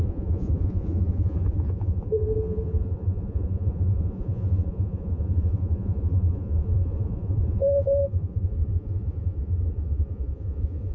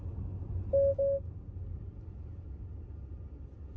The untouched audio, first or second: second